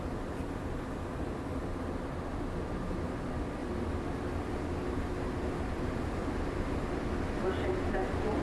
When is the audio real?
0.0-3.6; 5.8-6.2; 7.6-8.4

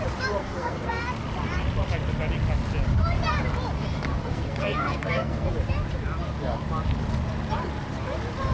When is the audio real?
0.0-0.4; 1.0-4.1; 5.5-8.5

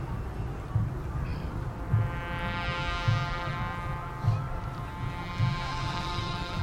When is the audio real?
0.0-5.7

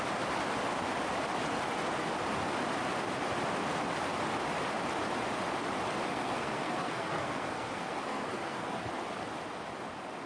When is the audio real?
0.0-6.1; 8.8-10.3

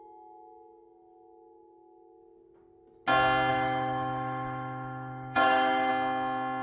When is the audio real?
0.0-3.5; 5.9-6.6

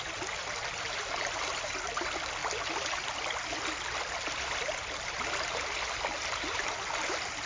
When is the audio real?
0.0-7.5